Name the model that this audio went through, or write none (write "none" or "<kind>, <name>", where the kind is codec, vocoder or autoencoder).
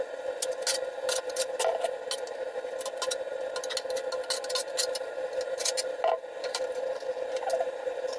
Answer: none